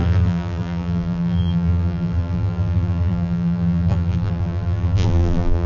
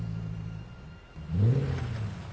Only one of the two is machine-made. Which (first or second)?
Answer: first